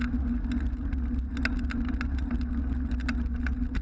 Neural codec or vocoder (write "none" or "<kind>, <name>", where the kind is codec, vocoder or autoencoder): none